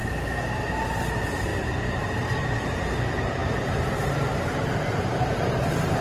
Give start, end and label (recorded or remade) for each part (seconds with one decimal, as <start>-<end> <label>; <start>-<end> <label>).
0.0-1.1 recorded; 1.1-6.0 remade